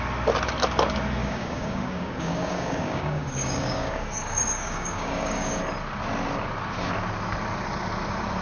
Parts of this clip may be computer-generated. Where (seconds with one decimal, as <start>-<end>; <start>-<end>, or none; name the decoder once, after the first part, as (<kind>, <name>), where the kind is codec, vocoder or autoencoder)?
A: 1.2-5.6 (codec, DAC)

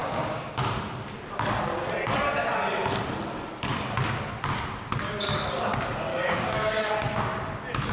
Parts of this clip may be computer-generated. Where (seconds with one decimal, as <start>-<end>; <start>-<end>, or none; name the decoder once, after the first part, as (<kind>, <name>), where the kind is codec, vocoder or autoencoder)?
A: 0.0-0.6 (codec, DAC); 6.1-7.1

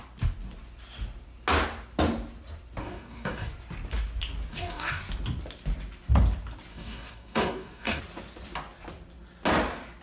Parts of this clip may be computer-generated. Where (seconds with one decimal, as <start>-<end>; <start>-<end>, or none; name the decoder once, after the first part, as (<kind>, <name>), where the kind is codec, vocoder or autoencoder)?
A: 2.8-3.5 (codec, DAC); 4.5-5.0; 6.7-8.0

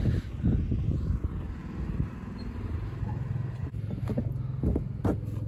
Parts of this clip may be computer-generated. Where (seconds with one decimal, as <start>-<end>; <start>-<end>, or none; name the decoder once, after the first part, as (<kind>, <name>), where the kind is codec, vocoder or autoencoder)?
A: none

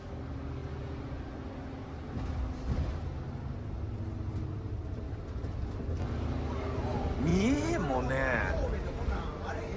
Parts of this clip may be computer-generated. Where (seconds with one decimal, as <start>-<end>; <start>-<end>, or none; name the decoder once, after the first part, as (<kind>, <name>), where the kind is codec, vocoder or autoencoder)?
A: none

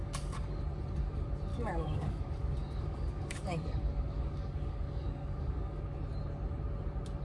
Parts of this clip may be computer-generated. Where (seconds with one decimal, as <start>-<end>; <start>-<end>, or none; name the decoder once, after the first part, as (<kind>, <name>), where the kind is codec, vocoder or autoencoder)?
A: 0.0-0.6 (codec, DAC); 1.5-5.8

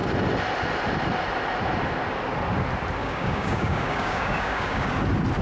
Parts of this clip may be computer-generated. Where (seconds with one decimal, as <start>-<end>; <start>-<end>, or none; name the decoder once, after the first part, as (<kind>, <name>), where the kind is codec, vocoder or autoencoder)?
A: 3.0-4.9 (codec, DAC)